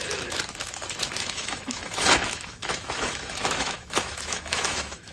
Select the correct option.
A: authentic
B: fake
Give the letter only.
B